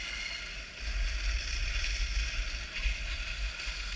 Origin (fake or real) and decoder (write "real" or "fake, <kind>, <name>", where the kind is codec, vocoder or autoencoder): real